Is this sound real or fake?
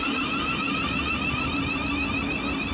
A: real